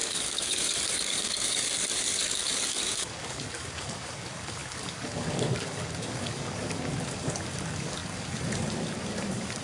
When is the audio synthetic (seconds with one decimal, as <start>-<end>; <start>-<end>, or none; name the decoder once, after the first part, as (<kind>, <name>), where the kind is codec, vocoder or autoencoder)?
0.0-9.6 (codec, DAC)